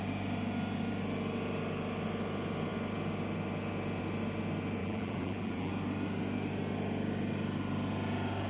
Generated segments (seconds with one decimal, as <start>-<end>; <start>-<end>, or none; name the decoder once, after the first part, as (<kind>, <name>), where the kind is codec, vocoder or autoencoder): 4.8-5.7 (vocoder, BigVGAN v2)